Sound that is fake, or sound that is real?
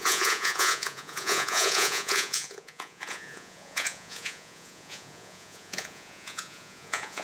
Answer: fake